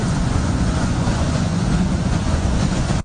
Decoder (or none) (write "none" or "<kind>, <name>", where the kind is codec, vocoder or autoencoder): vocoder, Vocos